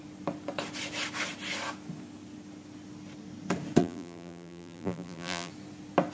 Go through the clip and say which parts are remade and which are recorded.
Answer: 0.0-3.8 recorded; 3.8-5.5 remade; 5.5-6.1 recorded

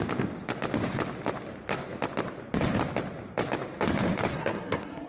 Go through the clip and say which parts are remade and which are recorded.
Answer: 0.0-4.3 recorded; 4.3-5.1 remade

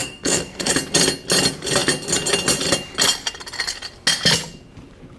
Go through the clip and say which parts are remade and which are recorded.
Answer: 0.0-0.7 remade; 0.7-5.2 recorded

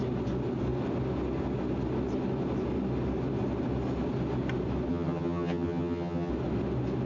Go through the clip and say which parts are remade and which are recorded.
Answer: 0.0-4.9 recorded; 4.9-6.3 remade; 6.3-7.1 recorded

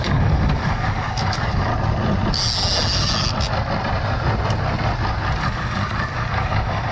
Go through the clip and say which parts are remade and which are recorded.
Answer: 0.0-1.7 remade; 1.7-5.4 recorded; 5.4-6.9 remade

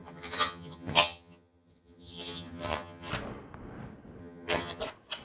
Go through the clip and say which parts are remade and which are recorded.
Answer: 0.0-3.1 remade; 3.1-4.2 recorded; 4.2-4.8 remade; 4.8-5.2 recorded